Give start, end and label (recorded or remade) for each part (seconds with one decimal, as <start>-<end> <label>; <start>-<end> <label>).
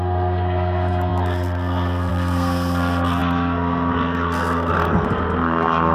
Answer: 0.0-5.9 remade